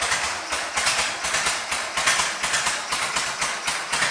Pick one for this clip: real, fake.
real